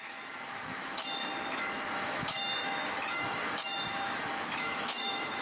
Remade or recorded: remade